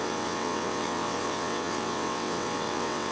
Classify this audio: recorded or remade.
remade